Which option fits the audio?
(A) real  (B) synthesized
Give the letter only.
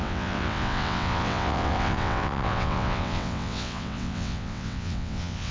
B